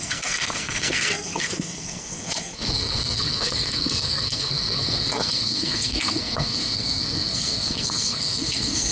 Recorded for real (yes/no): no